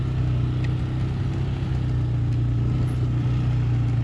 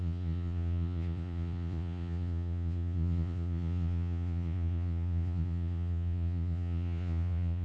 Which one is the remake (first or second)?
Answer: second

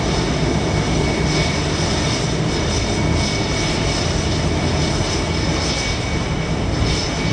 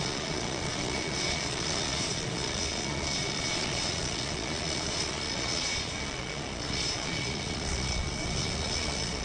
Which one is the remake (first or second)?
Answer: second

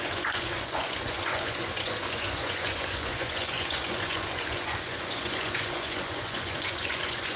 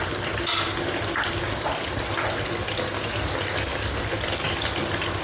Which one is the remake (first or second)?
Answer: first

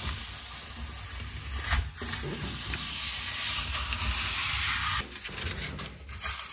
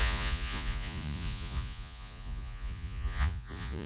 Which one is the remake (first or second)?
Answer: second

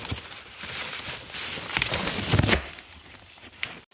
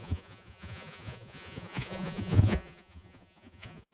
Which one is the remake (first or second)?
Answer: second